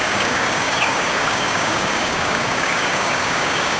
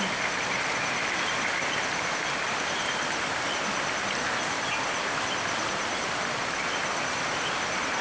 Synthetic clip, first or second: first